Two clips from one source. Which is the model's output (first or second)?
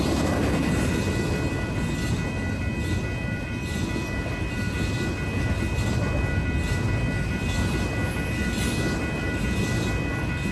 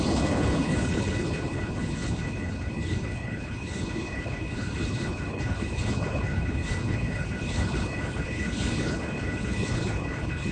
second